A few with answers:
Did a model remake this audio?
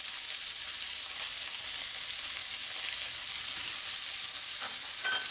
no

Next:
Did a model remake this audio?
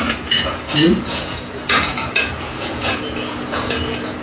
yes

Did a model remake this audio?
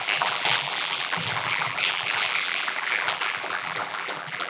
yes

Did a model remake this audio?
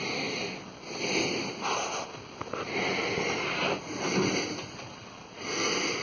no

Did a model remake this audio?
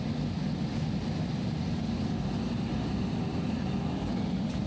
no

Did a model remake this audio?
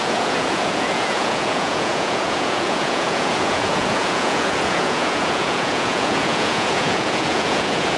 yes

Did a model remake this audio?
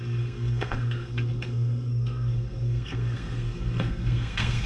yes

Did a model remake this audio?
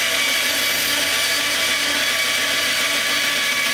no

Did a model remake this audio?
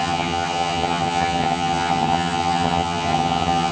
yes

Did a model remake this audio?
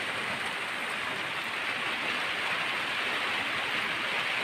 no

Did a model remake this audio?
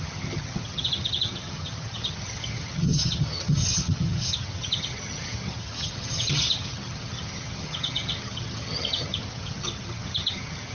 yes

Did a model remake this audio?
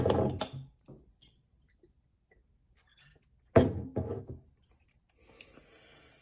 no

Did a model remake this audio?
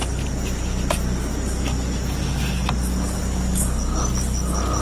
no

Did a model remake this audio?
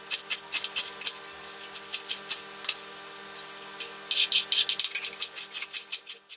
no